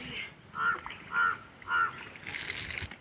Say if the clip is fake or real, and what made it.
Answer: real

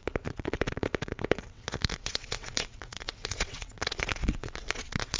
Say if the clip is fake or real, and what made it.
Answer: fake, vocoder, WaveNeXt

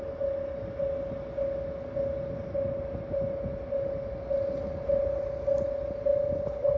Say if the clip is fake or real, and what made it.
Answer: real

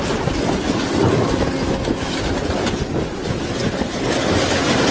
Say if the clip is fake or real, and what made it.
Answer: real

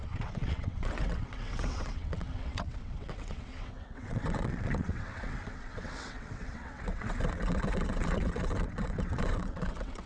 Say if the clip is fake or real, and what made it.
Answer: fake, vocoder, WaveNeXt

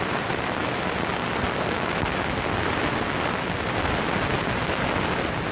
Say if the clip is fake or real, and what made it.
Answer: real